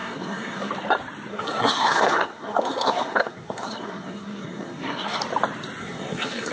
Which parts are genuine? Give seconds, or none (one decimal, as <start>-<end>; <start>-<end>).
0.7-1.3; 5.2-5.8